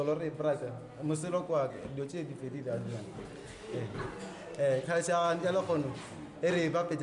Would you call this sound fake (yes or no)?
no